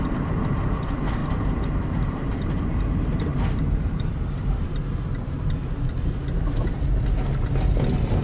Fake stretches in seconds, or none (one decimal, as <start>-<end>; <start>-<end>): 1.2-5.4

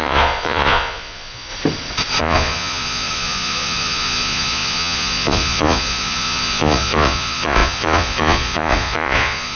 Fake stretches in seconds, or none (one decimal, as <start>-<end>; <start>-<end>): 0.0-1.5; 2.2-9.6